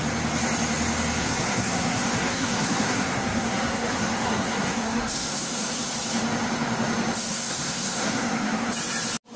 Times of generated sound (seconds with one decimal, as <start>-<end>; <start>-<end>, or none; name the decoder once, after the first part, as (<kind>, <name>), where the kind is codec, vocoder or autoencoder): 1.2-5.9 (codec, SNAC); 7.3-8.7